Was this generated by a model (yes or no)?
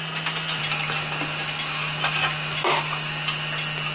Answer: no